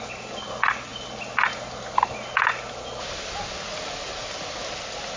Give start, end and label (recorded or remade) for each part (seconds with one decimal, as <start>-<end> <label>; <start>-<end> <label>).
0.0-5.2 recorded

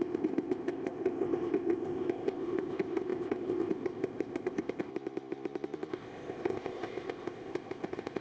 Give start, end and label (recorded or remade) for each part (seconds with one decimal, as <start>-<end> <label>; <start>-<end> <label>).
0.0-4.9 remade; 4.9-5.9 recorded; 5.9-8.2 remade

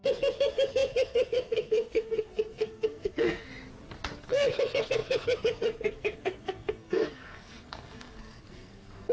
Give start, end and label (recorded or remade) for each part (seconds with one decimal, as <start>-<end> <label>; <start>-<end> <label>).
0.0-3.5 remade; 3.5-4.2 recorded; 4.2-9.1 remade

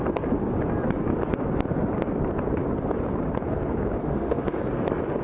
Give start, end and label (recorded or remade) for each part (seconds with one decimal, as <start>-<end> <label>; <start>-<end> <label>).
0.0-4.0 recorded; 4.0-4.6 remade; 4.6-5.2 recorded

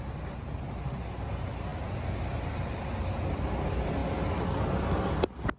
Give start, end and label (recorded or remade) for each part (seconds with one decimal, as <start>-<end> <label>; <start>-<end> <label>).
0.0-5.6 recorded

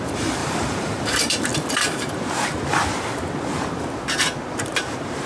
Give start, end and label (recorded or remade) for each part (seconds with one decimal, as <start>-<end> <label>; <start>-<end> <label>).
0.0-1.5 remade; 1.5-4.4 recorded; 4.4-5.3 remade